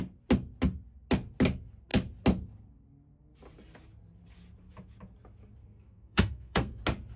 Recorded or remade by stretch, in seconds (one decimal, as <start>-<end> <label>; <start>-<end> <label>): 0.0-5.6 recorded; 5.6-6.8 remade; 6.8-7.2 recorded